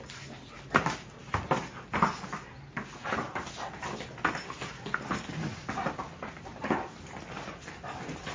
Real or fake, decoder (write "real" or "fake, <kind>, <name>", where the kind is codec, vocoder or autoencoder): real